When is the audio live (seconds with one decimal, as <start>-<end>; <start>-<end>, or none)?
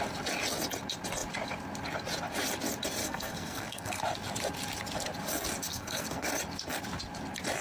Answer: 0.0-3.0; 4.0-5.7; 6.3-7.6